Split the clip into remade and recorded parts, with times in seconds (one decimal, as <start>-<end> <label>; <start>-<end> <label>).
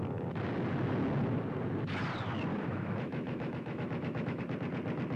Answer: 0.0-2.5 recorded; 2.5-4.4 remade; 4.4-5.2 recorded